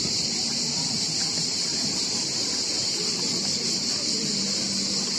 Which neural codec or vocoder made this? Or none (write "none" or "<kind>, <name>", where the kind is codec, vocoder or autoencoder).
vocoder, BigVGAN v2